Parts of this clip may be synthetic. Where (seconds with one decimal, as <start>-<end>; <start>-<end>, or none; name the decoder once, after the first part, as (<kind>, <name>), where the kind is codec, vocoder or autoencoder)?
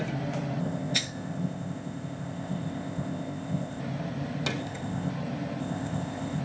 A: 0.6-3.8 (codec, ZipCodec); 4.6-5.1; 5.6-6.4